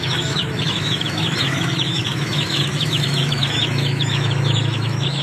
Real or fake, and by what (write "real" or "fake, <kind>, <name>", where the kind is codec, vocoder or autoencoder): fake, autoencoder, DAC-VAE